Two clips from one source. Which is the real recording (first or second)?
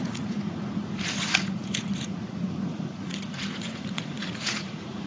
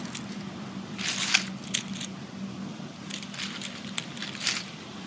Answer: second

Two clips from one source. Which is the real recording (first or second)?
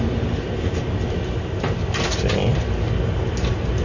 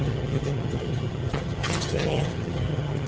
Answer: first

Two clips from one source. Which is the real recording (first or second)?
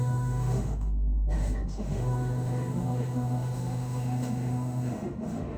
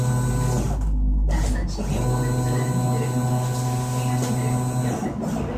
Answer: second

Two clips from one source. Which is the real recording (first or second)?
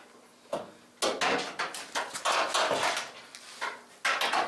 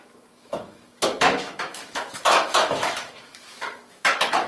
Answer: first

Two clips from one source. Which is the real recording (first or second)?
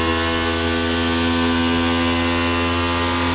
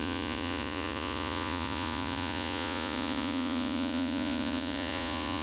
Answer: first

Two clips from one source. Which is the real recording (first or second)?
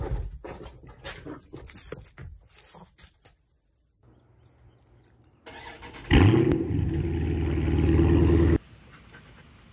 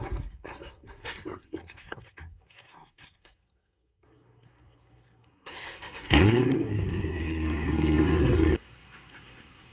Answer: first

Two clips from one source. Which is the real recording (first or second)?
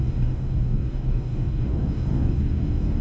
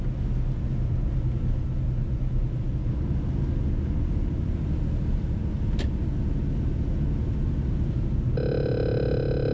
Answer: second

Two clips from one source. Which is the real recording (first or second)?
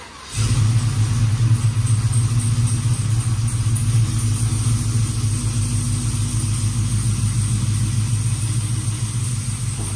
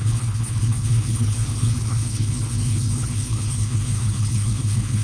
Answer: first